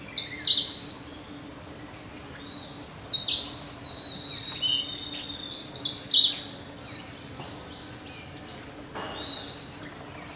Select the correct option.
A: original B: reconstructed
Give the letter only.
A